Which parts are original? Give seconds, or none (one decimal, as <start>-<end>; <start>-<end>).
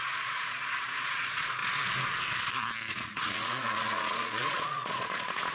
1.6-2.9